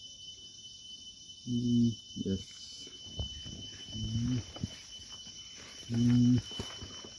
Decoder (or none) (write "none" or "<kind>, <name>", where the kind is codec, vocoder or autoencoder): none